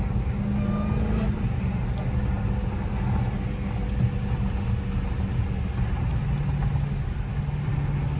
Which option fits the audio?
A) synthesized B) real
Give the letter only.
B